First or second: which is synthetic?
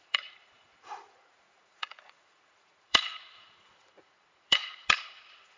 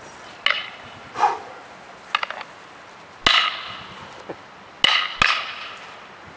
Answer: first